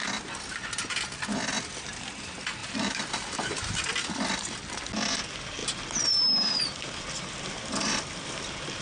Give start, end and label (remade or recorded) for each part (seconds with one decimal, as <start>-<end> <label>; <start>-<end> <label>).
0.0-2.6 recorded; 2.6-3.8 remade; 3.8-8.8 recorded